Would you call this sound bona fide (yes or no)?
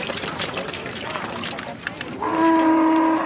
yes